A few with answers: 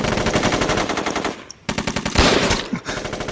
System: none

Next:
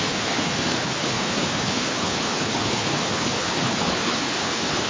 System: codec, HILCodec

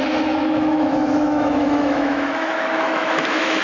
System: autoencoder, DAC-VAE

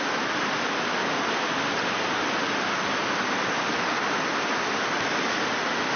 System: none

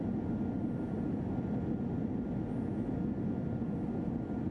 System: none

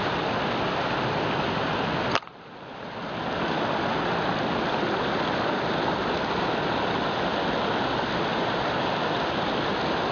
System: none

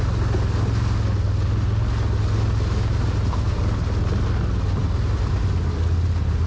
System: none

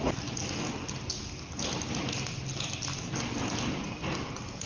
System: none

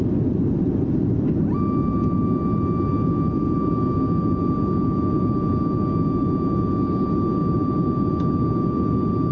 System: none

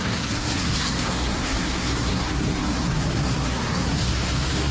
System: codec, SNAC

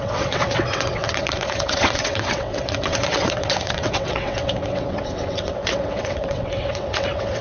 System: vocoder, WaveNeXt